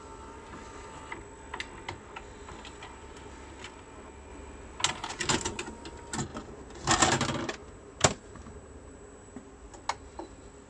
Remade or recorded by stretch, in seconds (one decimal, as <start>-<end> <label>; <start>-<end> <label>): 0.0-7.6 recorded; 7.6-9.3 remade; 9.3-10.7 recorded